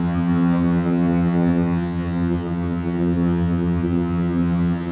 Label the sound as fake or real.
fake